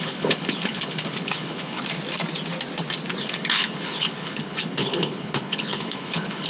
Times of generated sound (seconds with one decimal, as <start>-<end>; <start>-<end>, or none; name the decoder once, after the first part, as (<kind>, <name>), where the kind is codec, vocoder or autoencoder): 0.0-1.8 (codec, HILCodec); 3.2-6.5